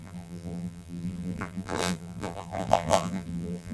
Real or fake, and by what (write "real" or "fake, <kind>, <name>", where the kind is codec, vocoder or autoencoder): fake, vocoder, BigVGAN v2